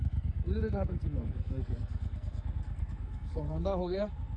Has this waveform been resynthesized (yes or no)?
yes